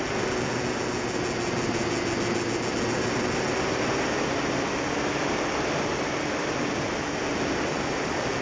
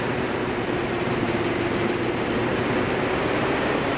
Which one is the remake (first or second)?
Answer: second